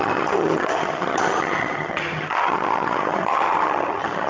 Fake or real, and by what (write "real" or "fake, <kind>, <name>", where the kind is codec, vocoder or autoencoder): fake, vocoder, HiFi-GAN